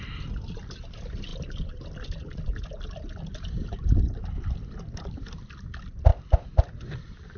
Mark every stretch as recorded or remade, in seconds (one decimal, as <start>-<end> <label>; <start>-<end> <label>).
0.0-7.4 recorded